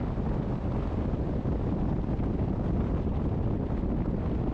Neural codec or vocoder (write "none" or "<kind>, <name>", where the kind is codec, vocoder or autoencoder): none